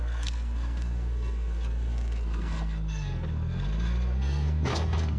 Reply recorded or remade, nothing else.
remade